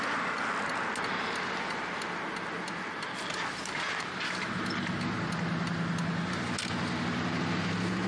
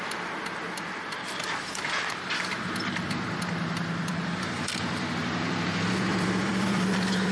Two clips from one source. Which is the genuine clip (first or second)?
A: first